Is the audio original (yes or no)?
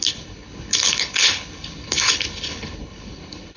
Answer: no